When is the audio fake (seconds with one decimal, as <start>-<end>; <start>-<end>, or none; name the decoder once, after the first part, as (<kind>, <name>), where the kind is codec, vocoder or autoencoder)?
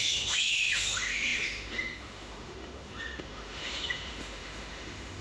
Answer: 0.0-5.2 (autoencoder, DAC-VAE)